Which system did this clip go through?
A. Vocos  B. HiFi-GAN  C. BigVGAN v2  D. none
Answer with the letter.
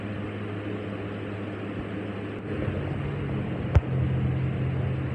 D